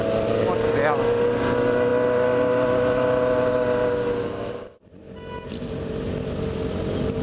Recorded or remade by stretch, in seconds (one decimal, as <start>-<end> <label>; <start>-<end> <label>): 0.0-7.2 recorded